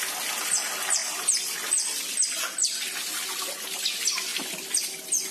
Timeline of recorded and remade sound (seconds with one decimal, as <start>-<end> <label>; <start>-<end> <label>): 0.0-2.6 recorded; 2.6-3.5 remade; 3.5-5.3 recorded